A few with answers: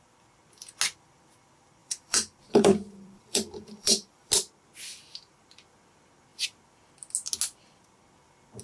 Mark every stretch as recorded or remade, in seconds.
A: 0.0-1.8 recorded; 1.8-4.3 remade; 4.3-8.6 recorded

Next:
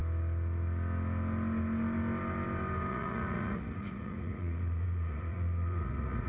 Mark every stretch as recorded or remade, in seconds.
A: 0.0-2.9 recorded; 2.9-6.3 remade